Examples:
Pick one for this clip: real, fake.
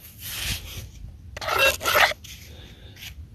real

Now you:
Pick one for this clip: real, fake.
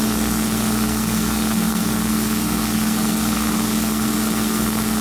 fake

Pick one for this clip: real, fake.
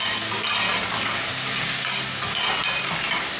real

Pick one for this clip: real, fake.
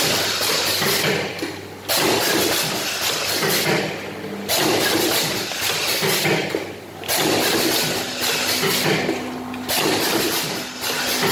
real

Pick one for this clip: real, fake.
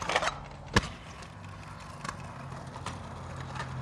real